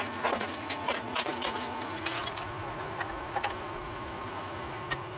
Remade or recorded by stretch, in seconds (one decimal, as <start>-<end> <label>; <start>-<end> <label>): 0.0-5.2 remade